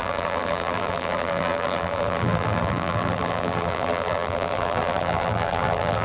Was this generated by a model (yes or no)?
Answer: yes